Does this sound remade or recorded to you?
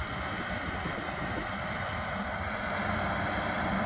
recorded